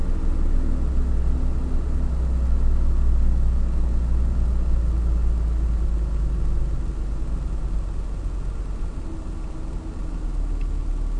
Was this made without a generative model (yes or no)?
yes